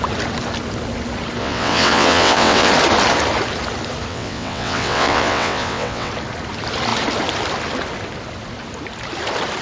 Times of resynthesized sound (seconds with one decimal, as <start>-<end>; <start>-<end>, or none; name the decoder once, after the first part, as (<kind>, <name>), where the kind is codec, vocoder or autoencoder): 1.4-2.7 (vocoder, WaveNeXt); 4.1-6.1